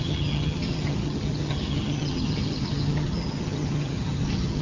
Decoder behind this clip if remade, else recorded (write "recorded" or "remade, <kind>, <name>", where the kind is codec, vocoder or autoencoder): remade, vocoder, HiFi-GAN